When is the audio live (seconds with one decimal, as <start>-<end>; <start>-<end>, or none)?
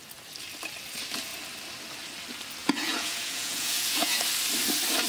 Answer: 0.0-2.6; 4.2-5.1